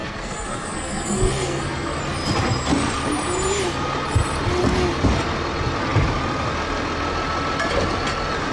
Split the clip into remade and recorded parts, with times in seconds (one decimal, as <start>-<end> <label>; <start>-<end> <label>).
0.0-2.0 remade; 2.0-8.5 recorded